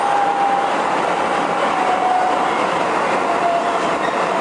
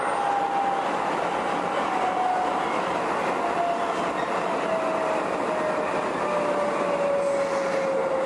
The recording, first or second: second